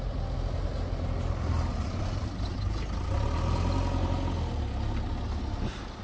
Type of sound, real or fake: real